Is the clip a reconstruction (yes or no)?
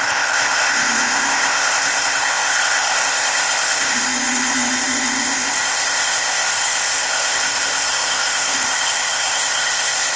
yes